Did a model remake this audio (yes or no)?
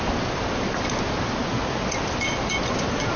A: no